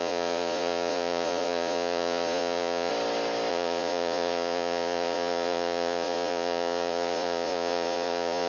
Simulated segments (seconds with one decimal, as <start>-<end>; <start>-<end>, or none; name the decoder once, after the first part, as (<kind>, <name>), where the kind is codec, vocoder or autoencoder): 0.0-2.9 (vocoder, Vocos); 3.5-8.5